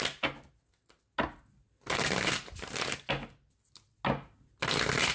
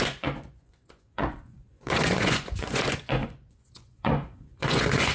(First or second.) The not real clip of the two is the second